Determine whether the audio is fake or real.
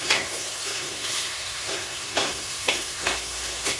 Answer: fake